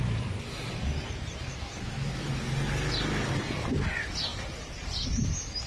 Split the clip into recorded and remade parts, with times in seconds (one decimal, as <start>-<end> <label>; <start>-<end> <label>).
0.0-1.5 recorded; 1.5-2.3 remade; 2.3-5.7 recorded